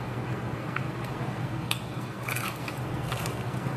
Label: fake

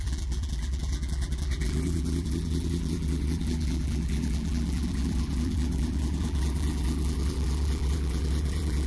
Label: fake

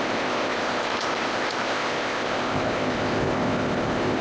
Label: fake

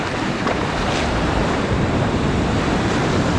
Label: fake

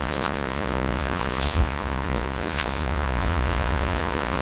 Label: fake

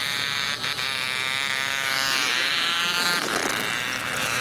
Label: real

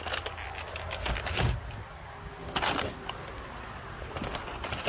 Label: real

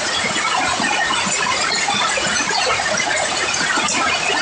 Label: fake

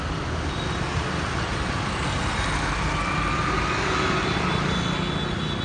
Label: real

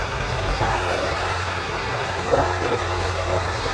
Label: fake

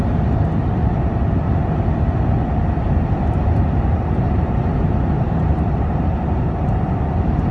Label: real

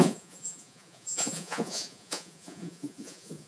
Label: fake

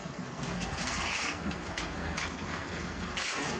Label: fake